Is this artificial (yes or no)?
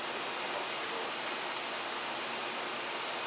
no